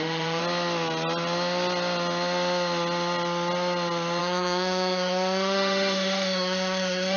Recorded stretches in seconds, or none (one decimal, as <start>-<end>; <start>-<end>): 0.4-4.2